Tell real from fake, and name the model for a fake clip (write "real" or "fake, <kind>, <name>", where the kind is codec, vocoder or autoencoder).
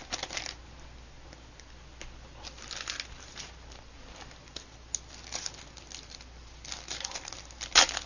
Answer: real